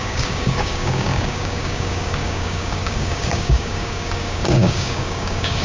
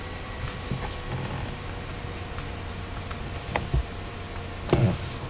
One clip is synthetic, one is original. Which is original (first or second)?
second